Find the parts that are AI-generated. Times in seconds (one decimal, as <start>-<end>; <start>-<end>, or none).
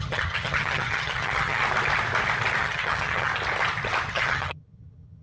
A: 0.0-1.6; 2.6-3.3; 4.1-5.2